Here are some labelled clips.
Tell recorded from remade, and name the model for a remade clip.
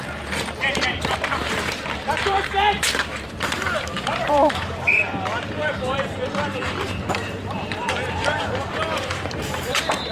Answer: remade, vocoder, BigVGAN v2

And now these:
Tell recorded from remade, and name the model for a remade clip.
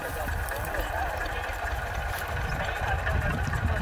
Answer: recorded